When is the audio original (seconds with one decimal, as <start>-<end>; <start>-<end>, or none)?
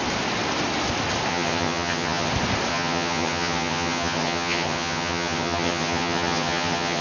0.0-1.3; 2.3-2.7